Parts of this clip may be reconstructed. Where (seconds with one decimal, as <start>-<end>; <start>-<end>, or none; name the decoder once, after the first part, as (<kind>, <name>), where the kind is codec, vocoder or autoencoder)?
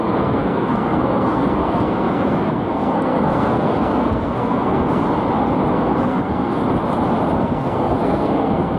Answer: 0.0-5.0 (codec, SNAC); 5.7-6.6; 7.4-8.8